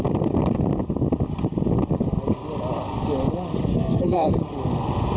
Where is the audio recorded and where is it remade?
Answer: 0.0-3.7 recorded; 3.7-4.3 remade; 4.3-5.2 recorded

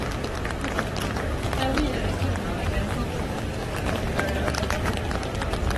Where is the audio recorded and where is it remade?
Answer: 0.0-3.6 remade; 3.6-4.9 recorded; 4.9-5.8 remade